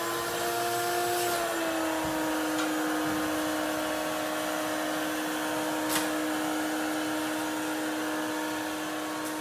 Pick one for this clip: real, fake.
real